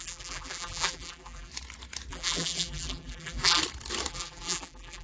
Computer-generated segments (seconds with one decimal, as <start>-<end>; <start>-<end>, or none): 0.0-1.5; 2.1-3.6; 4.1-5.0